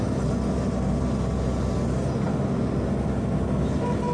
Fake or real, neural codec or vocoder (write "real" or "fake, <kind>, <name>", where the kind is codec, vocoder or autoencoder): real